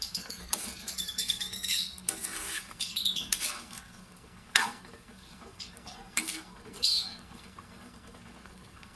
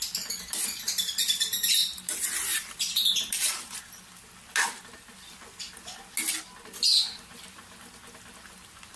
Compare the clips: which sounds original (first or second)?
second